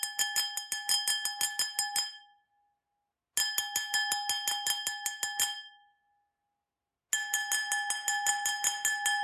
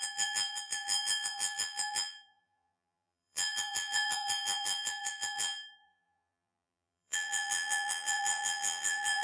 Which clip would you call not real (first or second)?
second